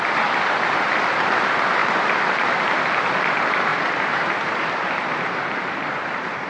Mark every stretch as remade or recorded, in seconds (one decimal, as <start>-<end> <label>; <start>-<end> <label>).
0.0-3.7 recorded; 3.7-6.5 remade